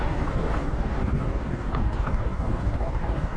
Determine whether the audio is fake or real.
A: fake